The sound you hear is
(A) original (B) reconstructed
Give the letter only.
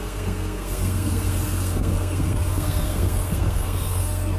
B